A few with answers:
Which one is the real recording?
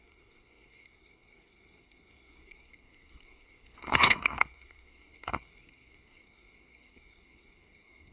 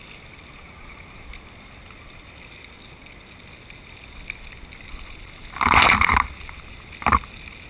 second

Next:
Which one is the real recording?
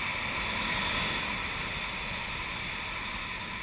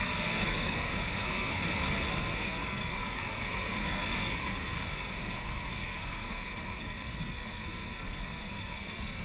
first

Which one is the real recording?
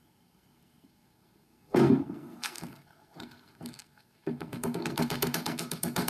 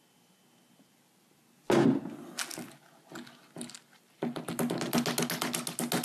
second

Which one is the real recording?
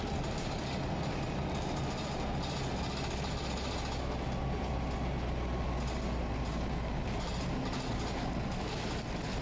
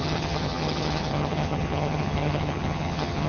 first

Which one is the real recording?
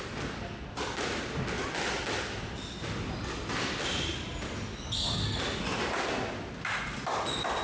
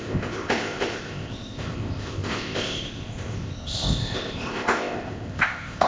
first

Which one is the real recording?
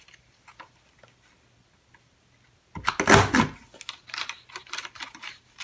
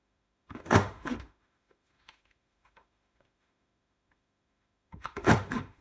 first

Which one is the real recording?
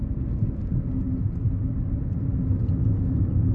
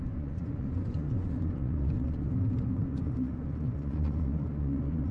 first